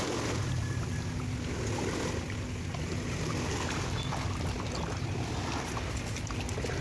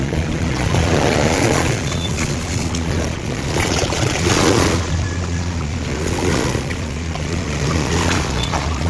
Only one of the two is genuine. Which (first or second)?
first